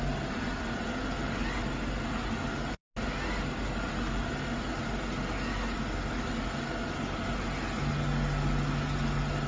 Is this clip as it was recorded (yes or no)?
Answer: yes